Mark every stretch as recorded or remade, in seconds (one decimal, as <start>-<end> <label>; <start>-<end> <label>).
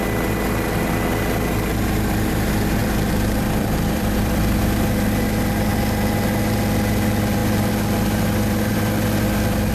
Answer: 0.0-2.8 recorded; 2.8-4.6 remade; 4.6-9.7 recorded